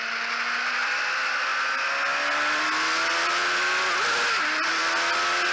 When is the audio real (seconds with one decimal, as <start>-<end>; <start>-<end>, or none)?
0.0-5.5